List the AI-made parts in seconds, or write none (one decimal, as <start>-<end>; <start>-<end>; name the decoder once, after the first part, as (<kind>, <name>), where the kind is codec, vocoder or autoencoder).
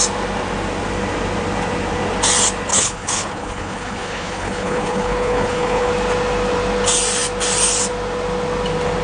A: 2.7-5.9 (codec, HILCodec)